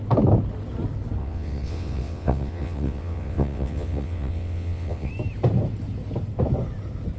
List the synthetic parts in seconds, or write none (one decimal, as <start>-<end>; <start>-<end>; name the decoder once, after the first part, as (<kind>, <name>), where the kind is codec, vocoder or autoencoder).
1.2-5.1 (vocoder, WaveNeXt)